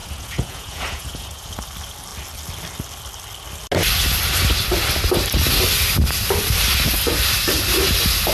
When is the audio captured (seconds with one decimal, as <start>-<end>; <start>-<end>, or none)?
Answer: 1.6-8.3